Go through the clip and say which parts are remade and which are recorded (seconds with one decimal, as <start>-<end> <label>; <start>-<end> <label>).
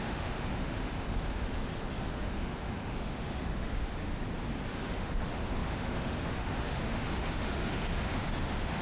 0.0-4.0 remade; 4.0-4.7 recorded; 4.7-8.8 remade